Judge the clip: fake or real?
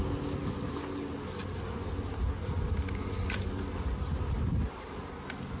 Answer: real